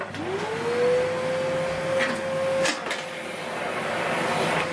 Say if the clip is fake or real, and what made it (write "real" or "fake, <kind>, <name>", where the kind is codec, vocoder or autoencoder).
real